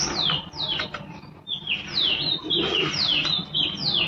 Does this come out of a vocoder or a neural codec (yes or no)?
no